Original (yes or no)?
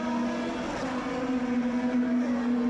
yes